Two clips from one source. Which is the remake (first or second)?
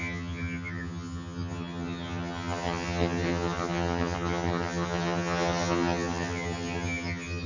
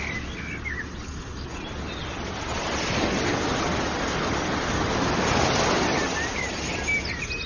first